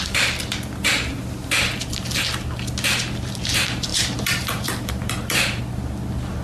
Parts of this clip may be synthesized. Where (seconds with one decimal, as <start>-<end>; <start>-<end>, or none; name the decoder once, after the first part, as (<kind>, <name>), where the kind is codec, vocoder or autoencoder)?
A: 3.9-5.6 (vocoder, BigVGAN v2)